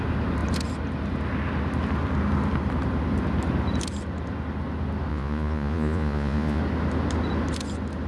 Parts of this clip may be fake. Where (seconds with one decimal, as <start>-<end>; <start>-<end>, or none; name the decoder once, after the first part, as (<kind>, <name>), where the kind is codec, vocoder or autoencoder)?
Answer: 5.1-6.6 (vocoder, Vocos)